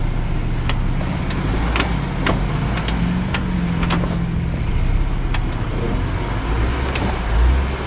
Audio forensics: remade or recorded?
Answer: recorded